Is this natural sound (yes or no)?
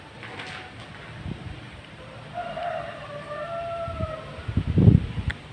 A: no